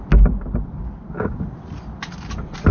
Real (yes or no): yes